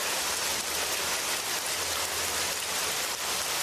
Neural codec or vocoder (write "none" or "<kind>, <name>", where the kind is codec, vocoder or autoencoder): none